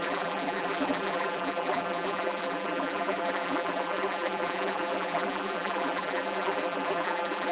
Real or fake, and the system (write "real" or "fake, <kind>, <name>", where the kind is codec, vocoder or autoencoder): fake, vocoder, BigVGAN v2